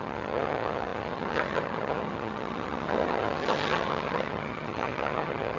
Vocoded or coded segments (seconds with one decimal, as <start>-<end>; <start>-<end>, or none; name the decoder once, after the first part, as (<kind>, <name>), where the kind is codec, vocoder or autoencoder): 0.0-5.6 (vocoder, HiFi-GAN)